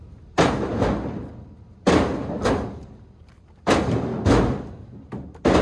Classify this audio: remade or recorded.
recorded